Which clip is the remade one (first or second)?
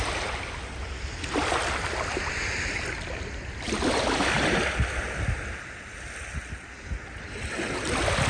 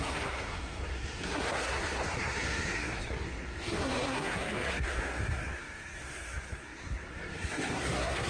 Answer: second